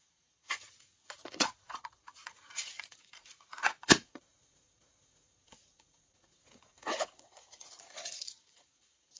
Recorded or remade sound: remade